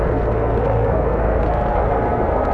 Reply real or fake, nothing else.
fake